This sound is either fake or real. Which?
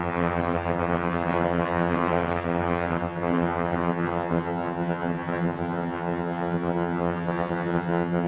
fake